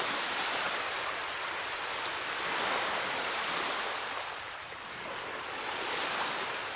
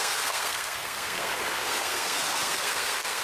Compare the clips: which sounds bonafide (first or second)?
first